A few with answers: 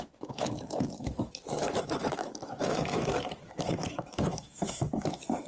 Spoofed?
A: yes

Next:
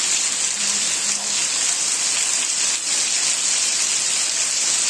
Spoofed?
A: no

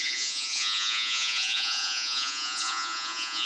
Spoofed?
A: yes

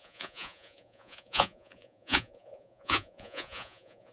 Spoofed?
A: yes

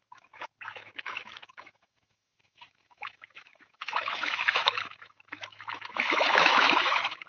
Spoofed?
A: yes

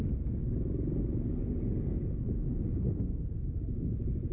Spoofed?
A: no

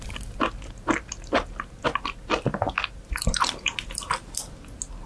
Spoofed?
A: no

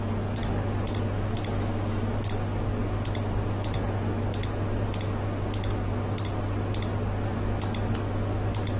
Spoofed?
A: no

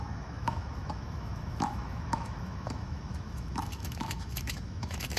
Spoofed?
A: yes